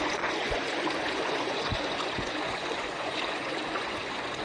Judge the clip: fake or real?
fake